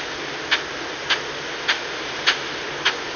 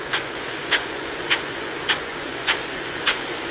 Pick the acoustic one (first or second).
first